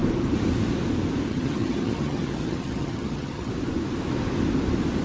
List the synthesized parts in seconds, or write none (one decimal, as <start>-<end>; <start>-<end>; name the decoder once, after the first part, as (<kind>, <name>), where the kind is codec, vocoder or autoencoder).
1.3-3.5 (vocoder, HiFi-GAN)